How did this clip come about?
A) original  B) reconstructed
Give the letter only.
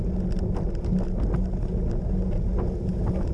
A